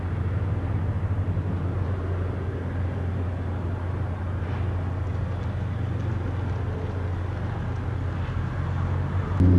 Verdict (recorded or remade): recorded